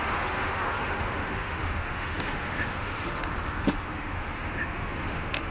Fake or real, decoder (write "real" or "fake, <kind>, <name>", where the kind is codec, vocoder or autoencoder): fake, autoencoder, DAC-VAE